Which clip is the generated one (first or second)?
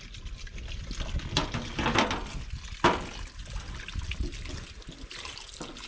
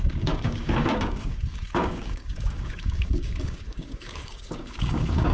second